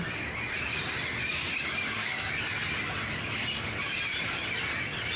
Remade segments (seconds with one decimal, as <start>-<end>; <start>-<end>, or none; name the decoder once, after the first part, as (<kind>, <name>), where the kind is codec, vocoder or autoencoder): 1.3-2.3 (codec, DAC)